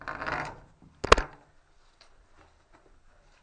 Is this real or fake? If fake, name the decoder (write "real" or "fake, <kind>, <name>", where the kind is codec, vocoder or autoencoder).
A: real